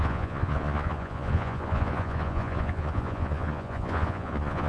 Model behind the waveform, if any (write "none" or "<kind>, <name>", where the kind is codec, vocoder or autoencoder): vocoder, Vocos